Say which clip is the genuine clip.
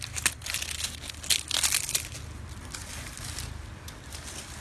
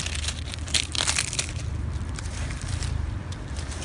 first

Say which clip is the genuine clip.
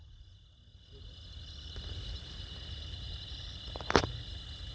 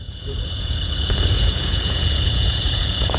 first